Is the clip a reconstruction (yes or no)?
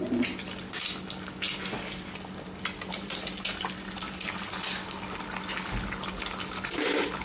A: no